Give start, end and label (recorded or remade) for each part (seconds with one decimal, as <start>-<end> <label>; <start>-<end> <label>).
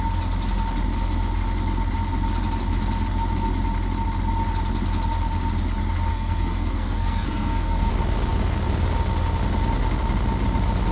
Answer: 0.0-6.1 recorded; 6.1-7.9 remade; 7.9-10.9 recorded